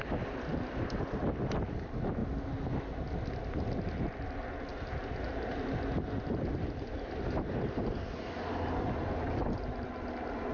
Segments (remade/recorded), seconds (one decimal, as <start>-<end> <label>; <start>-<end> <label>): 0.0-10.5 recorded